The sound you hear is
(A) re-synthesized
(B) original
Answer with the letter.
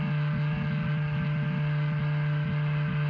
B